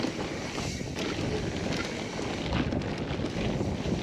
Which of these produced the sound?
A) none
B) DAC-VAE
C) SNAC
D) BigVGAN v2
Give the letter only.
A